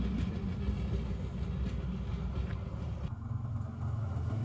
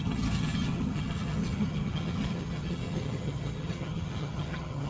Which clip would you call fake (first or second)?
second